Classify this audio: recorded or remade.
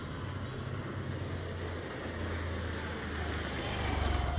recorded